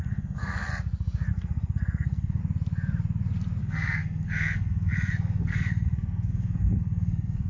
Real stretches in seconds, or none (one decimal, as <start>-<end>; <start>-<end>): 0.7-1.3; 2.4-3.6